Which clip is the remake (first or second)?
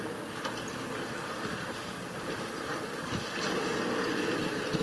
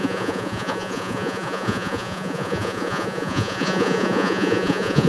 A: second